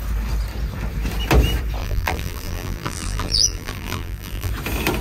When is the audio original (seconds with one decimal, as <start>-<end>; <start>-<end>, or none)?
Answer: 0.0-1.8; 4.5-5.0